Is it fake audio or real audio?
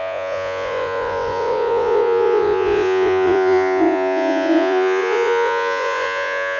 fake